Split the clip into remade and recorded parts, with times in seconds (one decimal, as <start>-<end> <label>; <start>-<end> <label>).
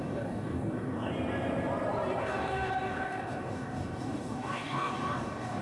0.0-1.1 remade; 1.1-2.2 recorded; 2.2-5.6 remade